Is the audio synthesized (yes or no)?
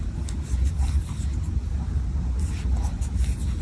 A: no